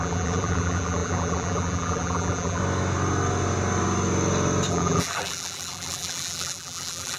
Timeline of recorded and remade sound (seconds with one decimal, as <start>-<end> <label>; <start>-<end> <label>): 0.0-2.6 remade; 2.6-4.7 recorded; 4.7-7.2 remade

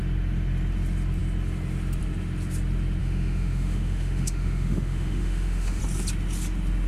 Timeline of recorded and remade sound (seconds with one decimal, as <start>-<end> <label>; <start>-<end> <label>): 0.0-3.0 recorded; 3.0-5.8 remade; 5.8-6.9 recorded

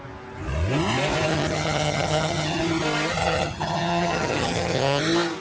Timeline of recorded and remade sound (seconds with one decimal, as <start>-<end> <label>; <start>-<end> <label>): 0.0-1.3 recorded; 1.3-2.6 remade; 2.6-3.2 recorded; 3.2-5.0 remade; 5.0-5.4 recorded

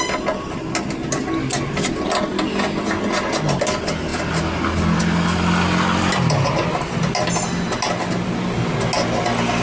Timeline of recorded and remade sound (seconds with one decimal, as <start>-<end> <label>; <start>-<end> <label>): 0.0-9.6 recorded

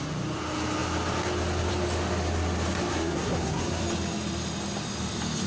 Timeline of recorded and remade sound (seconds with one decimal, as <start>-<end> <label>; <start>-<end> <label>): 0.0-2.9 recorded; 2.9-3.8 remade; 3.8-5.5 recorded

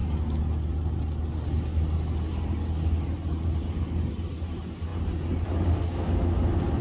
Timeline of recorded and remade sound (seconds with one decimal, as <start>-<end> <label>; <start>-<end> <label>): 0.0-6.8 recorded

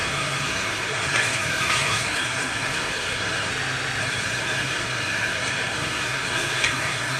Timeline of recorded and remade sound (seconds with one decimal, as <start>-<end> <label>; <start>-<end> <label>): 0.0-3.5 remade; 3.5-4.0 recorded; 4.0-7.2 remade

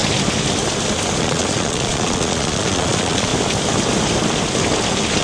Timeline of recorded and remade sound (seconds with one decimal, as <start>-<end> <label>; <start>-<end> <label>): 0.0-1.2 recorded; 1.2-3.3 remade; 3.3-5.2 recorded